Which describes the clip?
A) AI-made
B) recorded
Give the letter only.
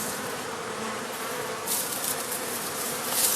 A